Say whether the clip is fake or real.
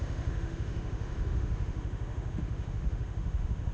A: fake